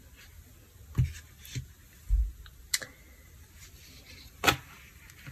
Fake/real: real